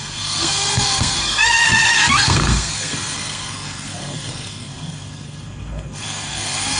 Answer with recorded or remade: remade